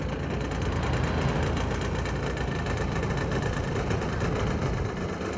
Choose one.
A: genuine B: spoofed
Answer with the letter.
A